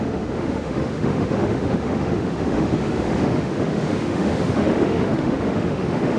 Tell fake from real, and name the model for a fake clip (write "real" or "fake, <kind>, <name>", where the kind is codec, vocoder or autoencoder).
fake, autoencoder, DAC-VAE